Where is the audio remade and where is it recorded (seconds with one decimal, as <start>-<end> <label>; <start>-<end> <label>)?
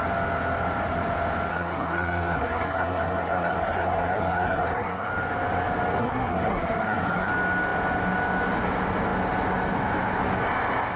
0.0-1.5 recorded; 1.5-5.1 remade; 5.1-6.0 recorded; 6.0-7.3 remade; 7.3-11.0 recorded